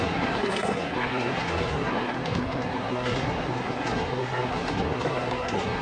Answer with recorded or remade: remade